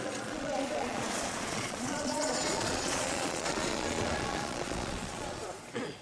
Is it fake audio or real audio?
fake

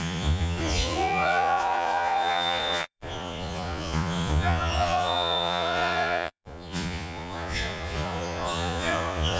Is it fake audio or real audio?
fake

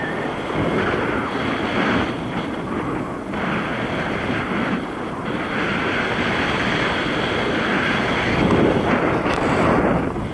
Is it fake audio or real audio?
real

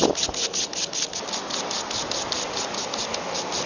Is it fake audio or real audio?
real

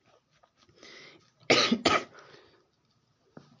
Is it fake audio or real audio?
real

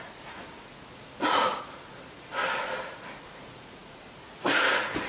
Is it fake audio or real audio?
fake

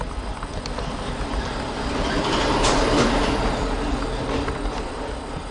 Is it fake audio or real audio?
real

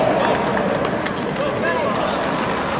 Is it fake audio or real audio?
real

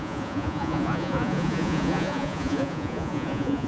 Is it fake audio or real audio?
fake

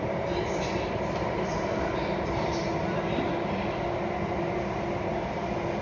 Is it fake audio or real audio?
real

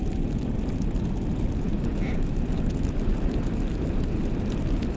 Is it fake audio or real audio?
real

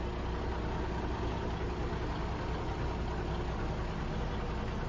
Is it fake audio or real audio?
real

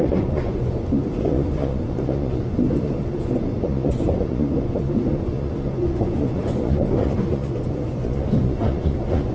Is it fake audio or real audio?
fake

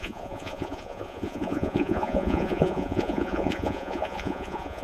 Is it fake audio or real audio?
fake